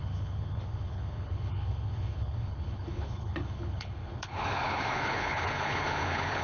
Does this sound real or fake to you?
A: fake